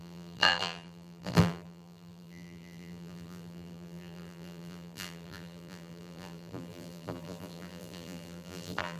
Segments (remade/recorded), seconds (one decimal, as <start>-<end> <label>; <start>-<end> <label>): 0.0-9.0 remade